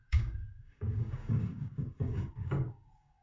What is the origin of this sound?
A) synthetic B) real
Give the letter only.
A